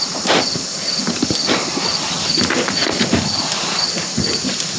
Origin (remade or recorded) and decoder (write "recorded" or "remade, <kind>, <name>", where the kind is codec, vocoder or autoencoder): recorded